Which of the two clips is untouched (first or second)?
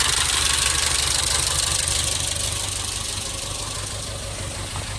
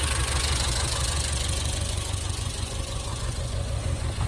first